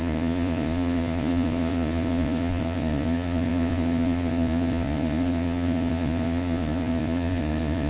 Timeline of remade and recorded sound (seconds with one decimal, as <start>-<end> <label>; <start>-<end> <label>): 0.0-7.9 remade